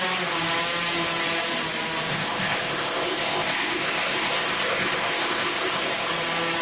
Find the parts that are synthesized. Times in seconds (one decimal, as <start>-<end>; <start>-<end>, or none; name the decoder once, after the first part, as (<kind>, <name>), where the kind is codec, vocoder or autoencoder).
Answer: 2.1-6.1 (codec, ZipCodec)